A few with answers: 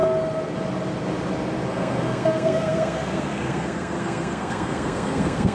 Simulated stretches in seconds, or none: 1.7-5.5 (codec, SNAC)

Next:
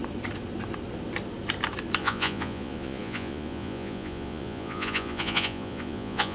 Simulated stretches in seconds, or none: 2.0-6.3 (vocoder, Vocos)

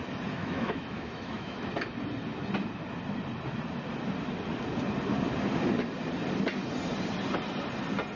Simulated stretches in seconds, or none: 0.4-1.7 (autoencoder, DAC-VAE)

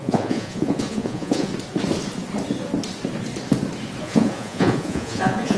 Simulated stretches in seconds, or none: 0.0-1.5 (vocoder, Vocos); 4.0-5.6

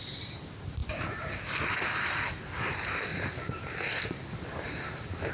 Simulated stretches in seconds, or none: none

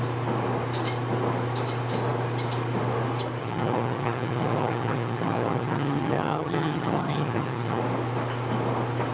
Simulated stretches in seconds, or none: 3.4-7.8 (vocoder, HiFi-GAN)

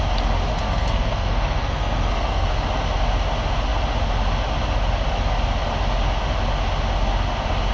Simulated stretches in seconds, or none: 0.5-2.5 (codec, SNAC)

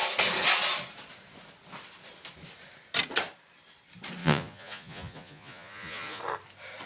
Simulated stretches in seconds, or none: 4.2-6.2 (vocoder, Vocos)